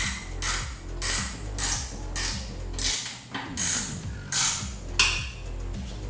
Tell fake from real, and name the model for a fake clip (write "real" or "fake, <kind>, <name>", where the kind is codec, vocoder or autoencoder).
real